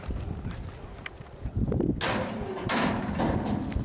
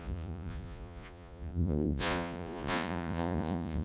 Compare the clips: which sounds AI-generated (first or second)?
second